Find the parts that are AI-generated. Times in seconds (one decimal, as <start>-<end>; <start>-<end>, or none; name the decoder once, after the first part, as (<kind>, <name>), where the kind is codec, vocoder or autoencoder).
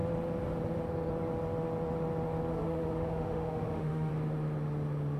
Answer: 2.5-4.1 (autoencoder, DAC-VAE)